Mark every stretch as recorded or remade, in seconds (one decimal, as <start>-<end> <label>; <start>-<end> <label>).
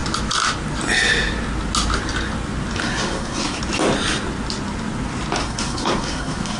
0.0-2.8 recorded; 2.8-3.6 remade; 3.6-5.4 recorded; 5.4-6.6 remade